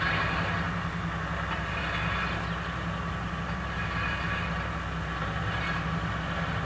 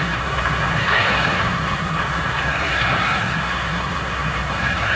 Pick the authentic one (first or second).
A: first